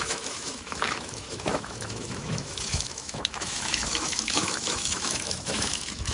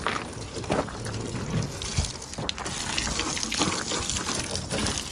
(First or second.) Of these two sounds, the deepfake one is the first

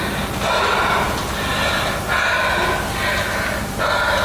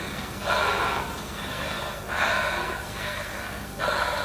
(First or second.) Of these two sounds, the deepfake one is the second